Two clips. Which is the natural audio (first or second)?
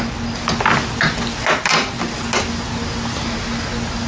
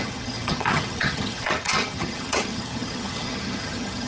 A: first